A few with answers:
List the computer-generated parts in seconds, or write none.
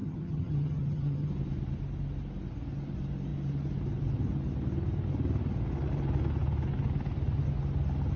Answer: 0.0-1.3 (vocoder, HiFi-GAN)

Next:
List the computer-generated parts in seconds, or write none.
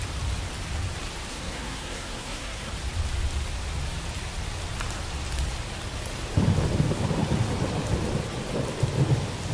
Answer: 1.3-2.7 (codec, SNAC)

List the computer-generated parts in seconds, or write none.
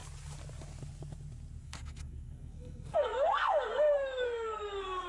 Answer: 1.6-5.1 (codec, SNAC)